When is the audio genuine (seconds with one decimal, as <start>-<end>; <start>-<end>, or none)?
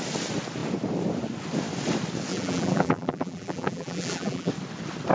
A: 0.0-2.3; 4.5-5.1